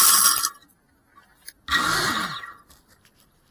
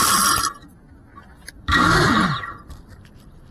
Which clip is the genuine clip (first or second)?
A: first